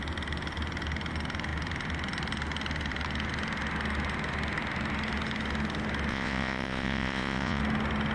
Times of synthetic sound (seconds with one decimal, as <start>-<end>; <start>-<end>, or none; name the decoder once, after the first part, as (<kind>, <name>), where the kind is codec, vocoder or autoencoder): 6.1-7.6 (vocoder, Vocos)

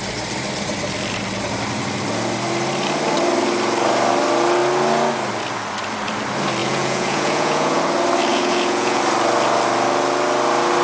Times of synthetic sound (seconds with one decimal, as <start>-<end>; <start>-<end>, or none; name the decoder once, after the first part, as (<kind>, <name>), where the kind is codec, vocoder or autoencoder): 6.6-7.8 (vocoder, Vocos); 8.3-9.0

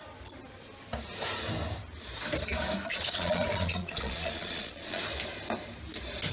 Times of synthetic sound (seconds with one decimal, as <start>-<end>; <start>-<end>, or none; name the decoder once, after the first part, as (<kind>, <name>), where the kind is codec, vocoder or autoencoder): 2.9-5.0 (vocoder, Vocos)

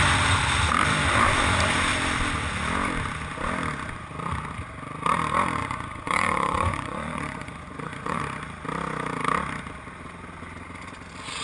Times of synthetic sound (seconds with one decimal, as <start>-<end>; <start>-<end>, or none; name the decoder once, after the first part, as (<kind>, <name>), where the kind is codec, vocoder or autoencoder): 5.6-8.2 (vocoder, Vocos)

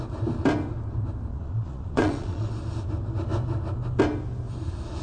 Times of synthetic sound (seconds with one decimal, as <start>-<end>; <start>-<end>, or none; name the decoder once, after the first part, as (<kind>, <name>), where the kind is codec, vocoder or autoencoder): 1.3-2.5 (vocoder, Vocos)

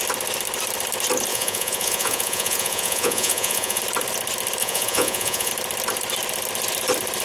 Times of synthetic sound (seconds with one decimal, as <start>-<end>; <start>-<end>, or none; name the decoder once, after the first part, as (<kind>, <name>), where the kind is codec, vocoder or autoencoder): 1.3-3.8 (vocoder, Vocos); 4.6-5.5

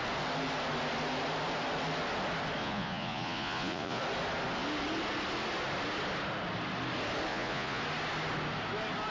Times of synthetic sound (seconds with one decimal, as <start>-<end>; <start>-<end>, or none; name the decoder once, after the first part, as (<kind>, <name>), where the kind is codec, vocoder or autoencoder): 2.6-4.0 (vocoder, Vocos); 7.3-7.8

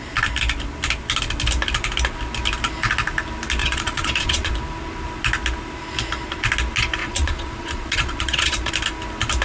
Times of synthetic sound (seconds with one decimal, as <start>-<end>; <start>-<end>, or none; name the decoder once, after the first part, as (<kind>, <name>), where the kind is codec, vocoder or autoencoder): 3.6-4.5 (vocoder, Vocos); 7.0-8.7